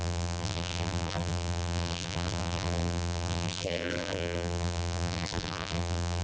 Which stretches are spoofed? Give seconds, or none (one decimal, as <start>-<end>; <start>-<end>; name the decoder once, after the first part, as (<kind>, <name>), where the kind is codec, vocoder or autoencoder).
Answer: 0.0-6.2 (vocoder, BigVGAN v2)